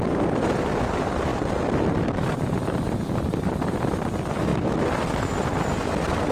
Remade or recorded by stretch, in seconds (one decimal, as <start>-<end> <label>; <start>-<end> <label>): 0.0-6.3 recorded